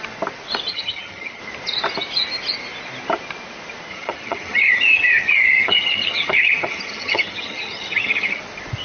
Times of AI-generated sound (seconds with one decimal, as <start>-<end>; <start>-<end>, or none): 0.7-1.4; 3.9-8.4